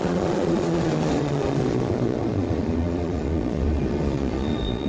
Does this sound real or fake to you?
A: fake